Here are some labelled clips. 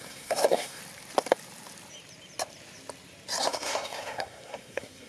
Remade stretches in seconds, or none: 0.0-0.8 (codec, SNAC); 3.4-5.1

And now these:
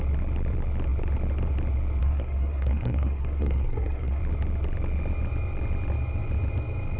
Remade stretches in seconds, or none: 2.0-4.2 (codec, SNAC)

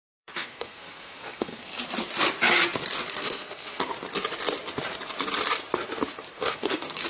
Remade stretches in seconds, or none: 0.0-1.7 (codec, SNAC); 3.1-3.8; 6.3-7.1

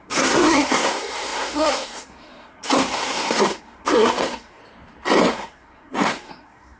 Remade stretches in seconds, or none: 0.0-4.6 (codec, SNAC); 5.3-6.8